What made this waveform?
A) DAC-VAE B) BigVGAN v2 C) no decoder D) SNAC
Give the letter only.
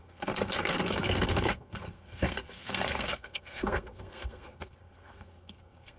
D